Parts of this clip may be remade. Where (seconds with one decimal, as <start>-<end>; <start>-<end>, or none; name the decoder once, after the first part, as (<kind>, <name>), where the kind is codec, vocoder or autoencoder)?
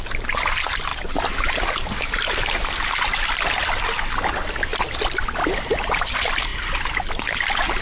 0.9-3.5 (vocoder, BigVGAN v2); 4.7-6.0